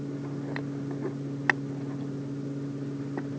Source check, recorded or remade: recorded